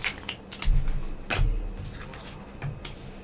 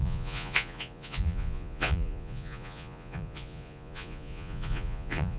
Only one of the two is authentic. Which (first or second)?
first